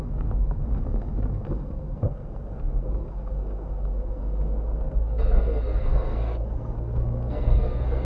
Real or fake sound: fake